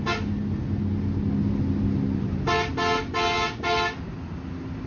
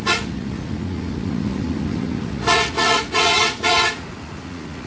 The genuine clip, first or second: first